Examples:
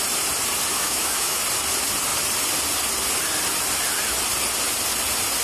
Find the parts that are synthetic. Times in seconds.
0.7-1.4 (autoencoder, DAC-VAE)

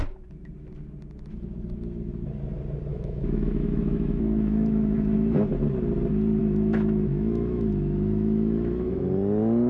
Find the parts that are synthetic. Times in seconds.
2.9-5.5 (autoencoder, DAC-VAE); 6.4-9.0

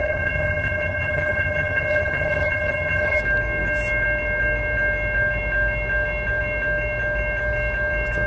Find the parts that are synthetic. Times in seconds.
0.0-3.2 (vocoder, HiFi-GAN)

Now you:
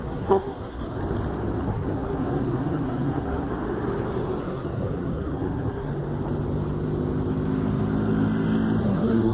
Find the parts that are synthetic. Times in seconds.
0.0-1.0 (codec, SNAC); 1.6-3.5; 4.4-5.9; 8.8-9.3

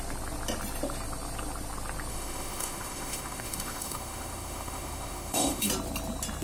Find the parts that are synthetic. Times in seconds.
2.1-5.7 (autoencoder, DAC-VAE)

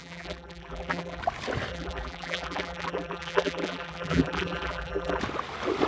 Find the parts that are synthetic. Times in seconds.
0.0-1.2 (vocoder, BigVGAN v2); 1.7-5.2

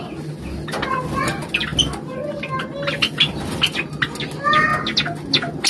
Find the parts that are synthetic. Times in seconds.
none